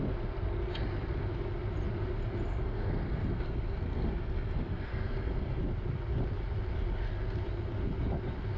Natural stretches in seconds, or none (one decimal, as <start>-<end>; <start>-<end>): 0.0-2.5; 5.6-8.6